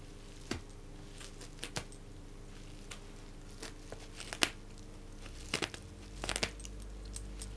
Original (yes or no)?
yes